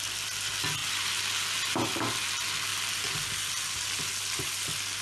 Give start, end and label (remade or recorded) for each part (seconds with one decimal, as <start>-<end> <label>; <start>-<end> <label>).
0.0-2.7 recorded; 2.7-3.3 remade; 3.3-5.0 recorded